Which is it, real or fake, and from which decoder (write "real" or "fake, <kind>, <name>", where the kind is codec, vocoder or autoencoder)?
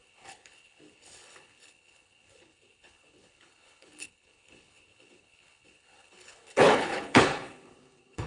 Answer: fake, codec, HILCodec